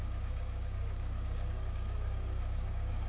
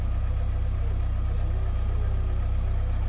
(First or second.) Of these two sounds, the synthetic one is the first